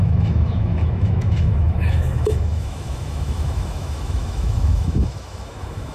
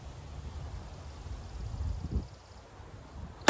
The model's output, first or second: first